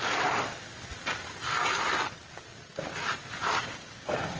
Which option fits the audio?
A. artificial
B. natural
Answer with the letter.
B